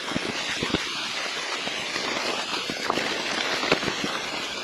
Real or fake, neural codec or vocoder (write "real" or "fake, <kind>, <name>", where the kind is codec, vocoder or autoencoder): real